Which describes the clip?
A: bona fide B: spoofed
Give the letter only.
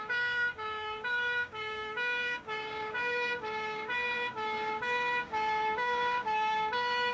B